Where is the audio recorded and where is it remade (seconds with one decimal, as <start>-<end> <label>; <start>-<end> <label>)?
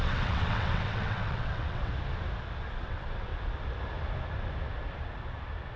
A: 0.0-1.9 remade; 1.9-2.7 recorded; 2.7-3.3 remade; 3.3-5.8 recorded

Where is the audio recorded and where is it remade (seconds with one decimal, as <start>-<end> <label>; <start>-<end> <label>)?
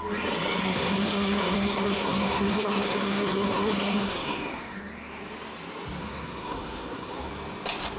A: 0.0-0.6 recorded; 0.6-4.8 remade; 4.8-6.0 recorded; 6.0-7.3 remade; 7.3-8.0 recorded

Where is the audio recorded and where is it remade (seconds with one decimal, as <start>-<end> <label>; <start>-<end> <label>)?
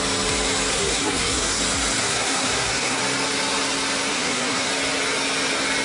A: 0.0-0.7 recorded; 0.7-1.6 remade; 1.6-2.0 recorded; 2.0-3.0 remade; 3.0-4.1 recorded; 4.1-4.7 remade; 4.7-5.8 recorded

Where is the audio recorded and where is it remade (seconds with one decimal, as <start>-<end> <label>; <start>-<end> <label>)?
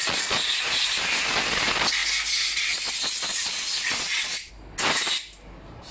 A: 0.0-0.9 remade; 0.9-3.3 recorded; 3.3-4.5 remade; 4.5-5.9 recorded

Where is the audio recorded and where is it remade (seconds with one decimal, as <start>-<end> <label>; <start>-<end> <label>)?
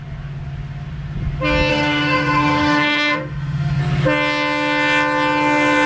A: 0.0-1.7 recorded; 1.7-3.8 remade; 3.8-5.9 recorded